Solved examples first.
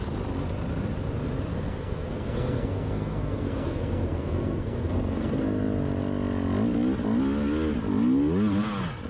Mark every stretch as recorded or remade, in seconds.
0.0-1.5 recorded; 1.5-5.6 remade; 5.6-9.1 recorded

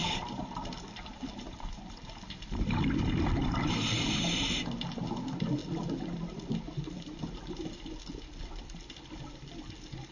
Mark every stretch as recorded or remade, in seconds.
0.0-3.7 remade; 3.7-10.1 recorded

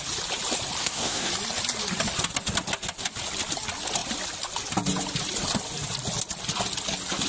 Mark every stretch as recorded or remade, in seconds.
0.0-0.8 recorded; 0.8-1.3 remade; 1.3-7.3 recorded

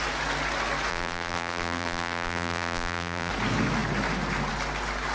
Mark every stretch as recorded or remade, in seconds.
0.0-0.9 recorded; 0.9-3.3 remade; 3.3-5.1 recorded

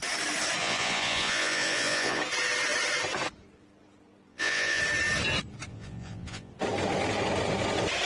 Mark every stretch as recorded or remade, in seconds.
0.0-0.6 recorded; 0.6-2.2 remade; 2.2-4.3 recorded; 4.3-4.8 remade; 4.8-5.7 recorded; 5.7-6.5 remade; 6.5-8.1 recorded

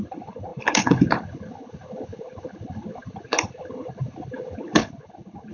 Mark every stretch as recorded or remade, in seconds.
0.0-5.5 remade

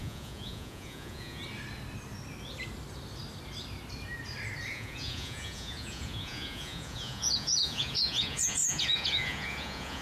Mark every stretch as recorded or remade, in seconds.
0.0-1.4 remade; 1.4-4.7 recorded; 4.7-10.0 remade

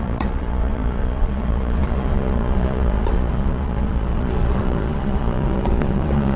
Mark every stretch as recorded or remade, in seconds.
0.0-6.4 remade